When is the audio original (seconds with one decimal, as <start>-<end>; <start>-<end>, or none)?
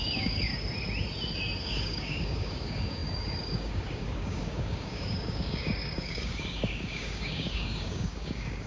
0.5-1.6